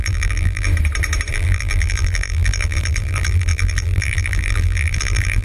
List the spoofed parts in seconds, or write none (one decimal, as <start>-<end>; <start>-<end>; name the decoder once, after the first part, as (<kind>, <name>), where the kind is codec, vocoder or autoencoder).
0.0-0.7 (vocoder, BigVGAN v2); 1.3-5.4